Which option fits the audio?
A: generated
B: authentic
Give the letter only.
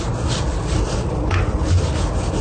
B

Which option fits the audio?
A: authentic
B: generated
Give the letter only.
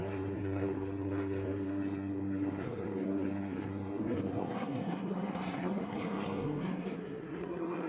B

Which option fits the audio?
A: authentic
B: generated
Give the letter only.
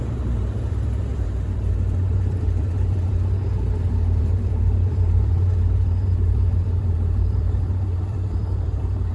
B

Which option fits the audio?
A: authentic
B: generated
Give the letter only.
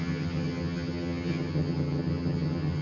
B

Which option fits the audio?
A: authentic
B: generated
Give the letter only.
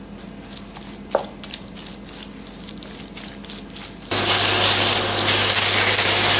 A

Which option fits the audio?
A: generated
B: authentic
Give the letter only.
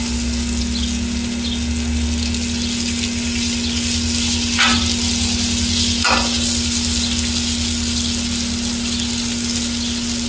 B